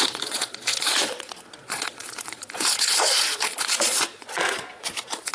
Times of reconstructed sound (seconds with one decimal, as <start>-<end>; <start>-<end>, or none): 0.0-5.3